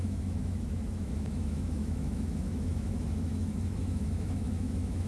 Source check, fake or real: fake